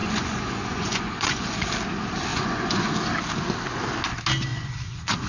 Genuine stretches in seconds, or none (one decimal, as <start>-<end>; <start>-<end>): 1.7-2.3; 2.9-4.5